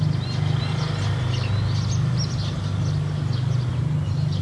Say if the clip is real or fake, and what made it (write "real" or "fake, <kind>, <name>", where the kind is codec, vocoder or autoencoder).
real